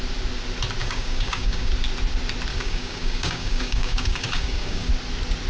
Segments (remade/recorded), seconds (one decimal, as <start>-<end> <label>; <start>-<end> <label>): 0.0-0.8 recorded; 0.8-1.7 remade; 1.7-2.5 recorded; 2.5-4.9 remade; 4.9-5.5 recorded